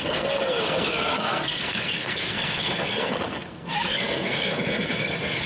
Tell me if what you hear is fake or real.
fake